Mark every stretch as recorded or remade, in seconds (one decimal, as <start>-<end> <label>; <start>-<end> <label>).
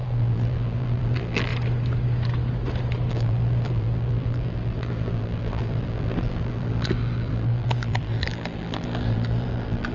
0.0-1.5 remade; 1.5-3.1 recorded; 3.1-9.9 remade